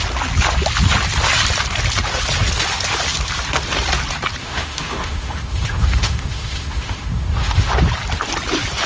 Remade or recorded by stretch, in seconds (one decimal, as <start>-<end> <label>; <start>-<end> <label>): 0.0-4.4 recorded; 4.4-7.7 remade; 7.7-8.9 recorded